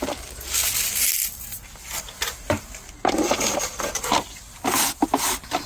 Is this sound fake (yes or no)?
no